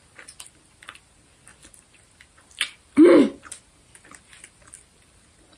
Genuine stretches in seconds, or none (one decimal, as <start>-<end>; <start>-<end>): 0.0-5.6